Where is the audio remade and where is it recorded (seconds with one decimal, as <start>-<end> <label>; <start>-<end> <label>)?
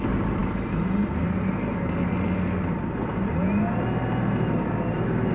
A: 0.0-5.3 recorded